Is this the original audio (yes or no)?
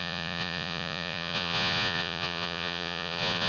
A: no